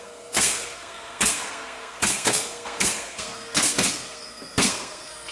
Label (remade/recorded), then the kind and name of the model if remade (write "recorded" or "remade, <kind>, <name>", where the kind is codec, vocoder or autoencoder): remade, codec, SNAC